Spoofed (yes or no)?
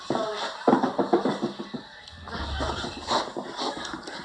no